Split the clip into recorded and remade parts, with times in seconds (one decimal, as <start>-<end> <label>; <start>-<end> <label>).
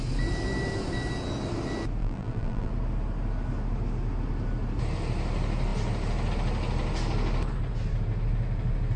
0.0-2.0 recorded; 2.0-2.7 remade; 2.7-9.0 recorded